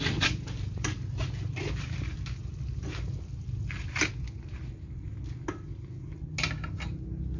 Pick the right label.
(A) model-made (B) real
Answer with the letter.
B